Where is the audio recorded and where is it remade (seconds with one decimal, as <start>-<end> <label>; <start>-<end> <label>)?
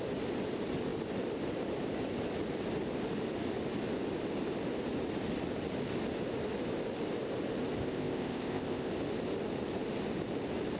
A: 0.0-7.8 recorded; 7.8-8.9 remade; 8.9-10.8 recorded